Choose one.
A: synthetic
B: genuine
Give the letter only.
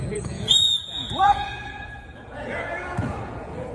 A